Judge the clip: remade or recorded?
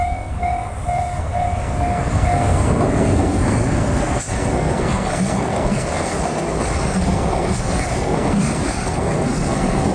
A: remade